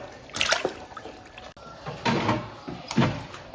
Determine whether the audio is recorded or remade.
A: recorded